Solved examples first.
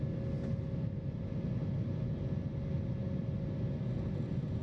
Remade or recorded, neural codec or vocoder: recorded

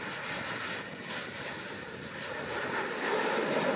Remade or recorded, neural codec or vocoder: recorded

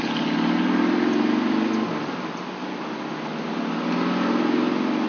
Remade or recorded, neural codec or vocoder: recorded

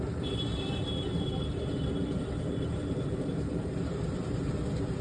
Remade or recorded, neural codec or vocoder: remade, vocoder, BigVGAN v2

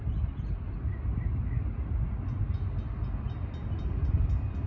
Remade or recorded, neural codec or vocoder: recorded